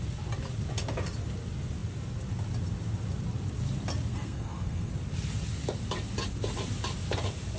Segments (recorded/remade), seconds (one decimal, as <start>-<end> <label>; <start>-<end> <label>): 0.0-4.1 recorded; 4.1-4.9 remade; 4.9-7.6 recorded